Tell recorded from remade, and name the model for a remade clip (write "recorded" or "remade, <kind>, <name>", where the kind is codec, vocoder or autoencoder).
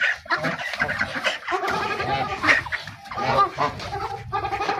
recorded